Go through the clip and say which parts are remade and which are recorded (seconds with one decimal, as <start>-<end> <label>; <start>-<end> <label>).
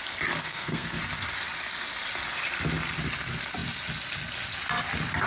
0.0-0.4 recorded; 0.4-1.0 remade; 1.0-5.3 recorded